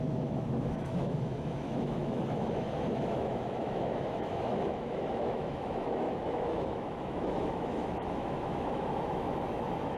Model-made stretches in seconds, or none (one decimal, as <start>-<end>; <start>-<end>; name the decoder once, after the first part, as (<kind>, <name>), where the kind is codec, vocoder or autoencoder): 0.0-10.0 (autoencoder, DAC-VAE)